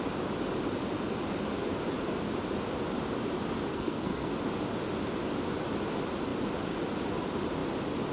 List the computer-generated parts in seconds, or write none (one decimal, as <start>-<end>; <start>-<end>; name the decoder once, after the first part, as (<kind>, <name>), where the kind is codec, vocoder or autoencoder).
3.7-4.3 (codec, SNAC)